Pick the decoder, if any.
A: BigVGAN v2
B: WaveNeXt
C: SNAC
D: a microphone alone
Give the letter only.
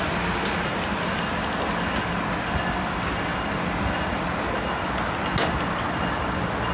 D